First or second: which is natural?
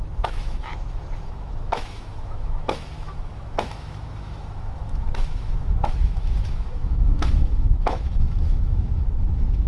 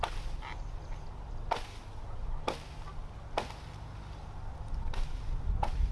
second